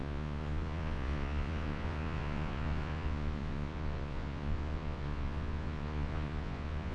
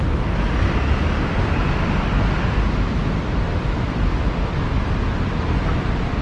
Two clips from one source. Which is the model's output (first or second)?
first